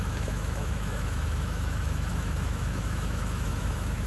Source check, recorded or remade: remade